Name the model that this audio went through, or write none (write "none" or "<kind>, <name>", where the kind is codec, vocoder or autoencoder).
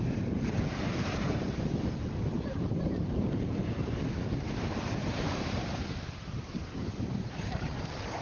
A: vocoder, BigVGAN v2